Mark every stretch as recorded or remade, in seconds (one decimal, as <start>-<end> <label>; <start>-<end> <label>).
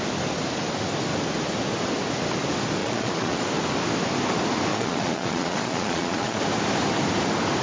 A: 0.0-2.8 recorded; 2.8-3.4 remade; 3.4-4.7 recorded; 4.7-6.4 remade; 6.4-7.6 recorded